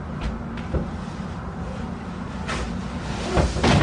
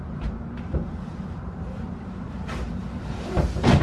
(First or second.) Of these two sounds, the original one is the first